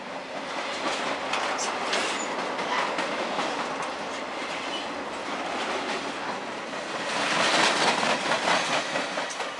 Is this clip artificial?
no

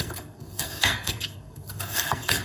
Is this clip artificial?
yes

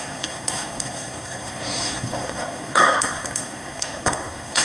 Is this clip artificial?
yes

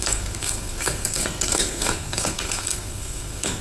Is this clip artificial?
yes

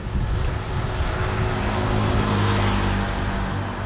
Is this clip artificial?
no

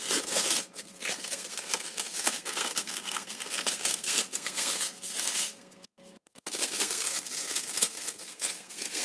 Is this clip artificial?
yes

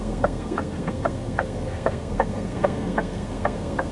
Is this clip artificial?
yes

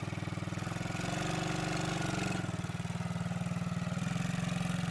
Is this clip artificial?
no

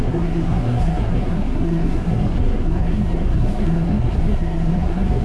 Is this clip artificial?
yes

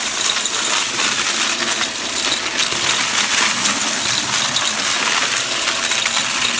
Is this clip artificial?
no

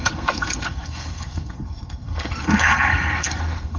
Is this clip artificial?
yes